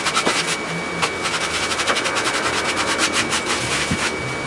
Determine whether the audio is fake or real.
real